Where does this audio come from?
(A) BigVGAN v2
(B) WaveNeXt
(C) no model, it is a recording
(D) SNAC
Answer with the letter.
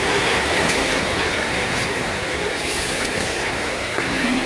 D